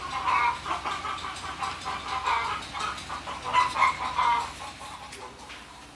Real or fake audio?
real